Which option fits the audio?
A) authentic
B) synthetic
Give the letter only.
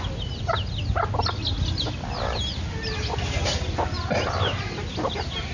A